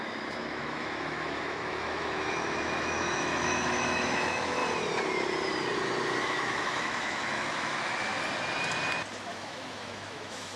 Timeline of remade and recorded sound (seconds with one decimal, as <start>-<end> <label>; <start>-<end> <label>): 0.0-4.6 remade; 4.6-6.2 recorded; 6.2-8.1 remade; 8.1-9.3 recorded; 9.3-10.6 remade